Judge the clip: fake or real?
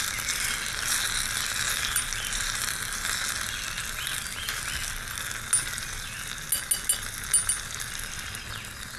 real